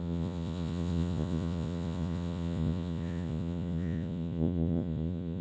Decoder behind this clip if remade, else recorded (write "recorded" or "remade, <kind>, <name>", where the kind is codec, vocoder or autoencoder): remade, vocoder, Vocos